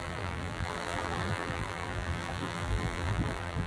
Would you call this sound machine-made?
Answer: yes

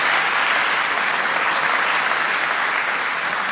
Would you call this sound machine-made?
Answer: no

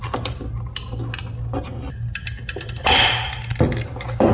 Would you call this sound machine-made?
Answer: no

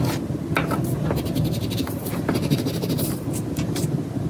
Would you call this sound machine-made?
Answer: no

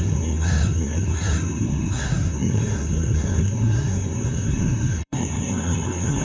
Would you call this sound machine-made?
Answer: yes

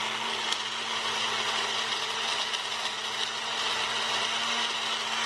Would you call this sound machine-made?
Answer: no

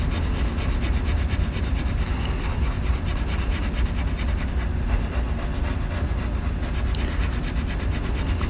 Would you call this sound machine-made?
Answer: no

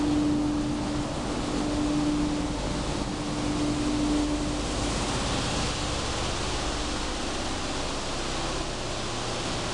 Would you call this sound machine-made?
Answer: no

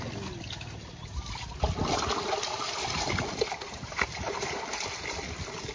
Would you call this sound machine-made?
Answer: no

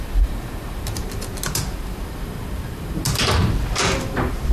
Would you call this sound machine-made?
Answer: no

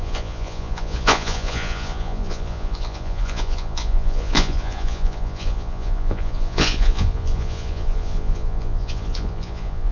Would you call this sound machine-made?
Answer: yes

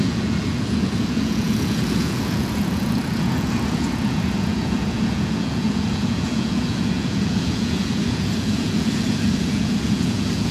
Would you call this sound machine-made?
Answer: yes